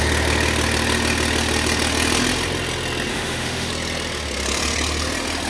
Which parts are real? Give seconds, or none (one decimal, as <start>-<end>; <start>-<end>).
0.0-3.1; 3.7-5.5